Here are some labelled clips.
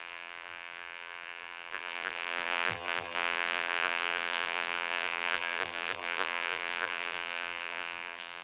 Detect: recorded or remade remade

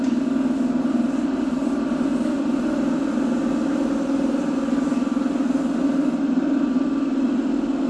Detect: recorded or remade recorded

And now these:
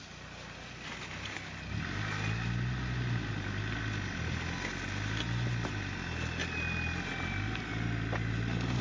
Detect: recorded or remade recorded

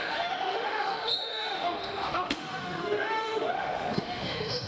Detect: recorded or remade remade